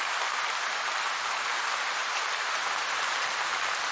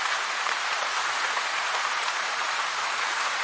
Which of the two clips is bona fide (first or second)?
first